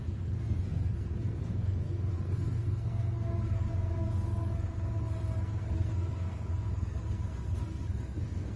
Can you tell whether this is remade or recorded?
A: remade